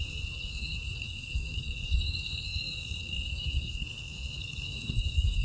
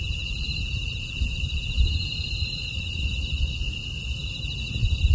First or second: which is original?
second